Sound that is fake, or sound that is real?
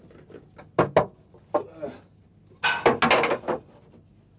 real